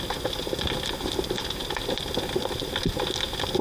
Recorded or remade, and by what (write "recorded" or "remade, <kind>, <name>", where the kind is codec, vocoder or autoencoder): recorded